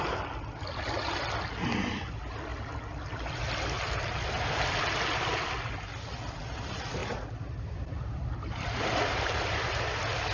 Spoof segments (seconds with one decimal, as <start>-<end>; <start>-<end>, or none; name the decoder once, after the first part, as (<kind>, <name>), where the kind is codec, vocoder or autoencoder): 7.0-9.7 (vocoder, BigVGAN v2)